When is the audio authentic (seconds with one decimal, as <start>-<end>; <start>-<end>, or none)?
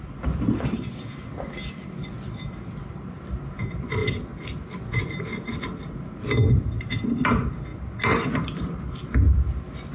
0.0-9.9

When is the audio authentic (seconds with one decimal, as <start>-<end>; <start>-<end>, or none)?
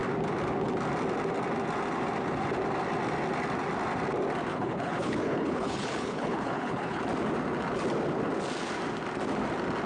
0.0-4.5; 7.0-9.9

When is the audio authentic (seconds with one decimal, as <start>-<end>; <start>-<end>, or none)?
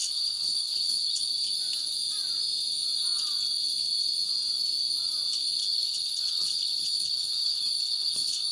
1.3-5.6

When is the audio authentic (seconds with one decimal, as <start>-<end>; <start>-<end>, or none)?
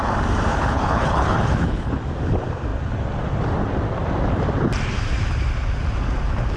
0.0-0.5; 1.9-6.6